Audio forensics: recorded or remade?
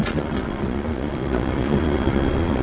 remade